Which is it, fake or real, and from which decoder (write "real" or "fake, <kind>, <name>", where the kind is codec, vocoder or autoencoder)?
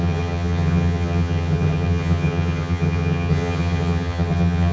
fake, vocoder, HiFi-GAN